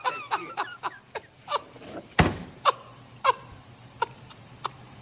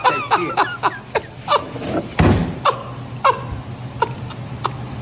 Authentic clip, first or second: second